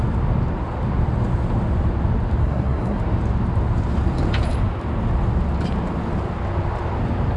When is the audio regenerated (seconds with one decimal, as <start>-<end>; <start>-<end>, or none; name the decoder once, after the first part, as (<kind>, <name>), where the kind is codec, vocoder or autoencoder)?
2.4-3.0 (codec, SNAC)